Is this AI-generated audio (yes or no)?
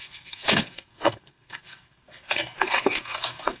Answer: yes